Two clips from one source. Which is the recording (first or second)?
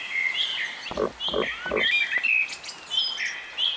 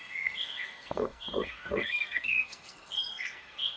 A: first